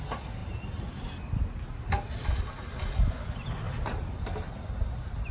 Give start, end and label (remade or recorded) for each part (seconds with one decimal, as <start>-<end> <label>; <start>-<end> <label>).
0.0-5.3 recorded